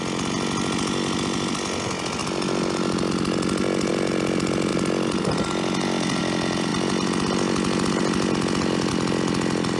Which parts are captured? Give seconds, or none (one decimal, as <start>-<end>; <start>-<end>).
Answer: 0.0-9.8